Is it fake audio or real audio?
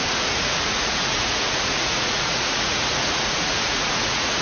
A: fake